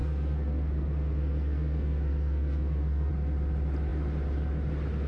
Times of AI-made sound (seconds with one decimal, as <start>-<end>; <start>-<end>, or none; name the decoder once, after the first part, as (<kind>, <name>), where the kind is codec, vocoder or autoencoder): 0.0-3.1 (codec, SNAC)